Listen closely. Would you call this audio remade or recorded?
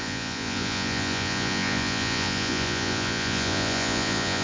remade